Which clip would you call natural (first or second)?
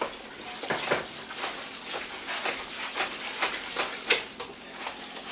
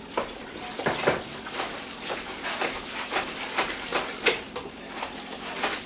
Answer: first